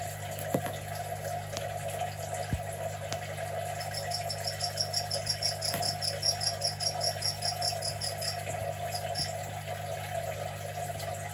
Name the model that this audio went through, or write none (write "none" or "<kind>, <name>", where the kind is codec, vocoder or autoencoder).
none